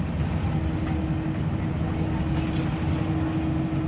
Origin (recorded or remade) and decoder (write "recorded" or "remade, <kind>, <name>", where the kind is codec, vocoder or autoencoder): recorded